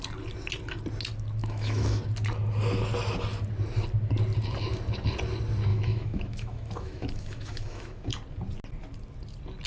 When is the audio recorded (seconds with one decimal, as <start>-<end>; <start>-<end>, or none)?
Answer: 0.0-1.4; 2.0-5.7; 8.1-9.7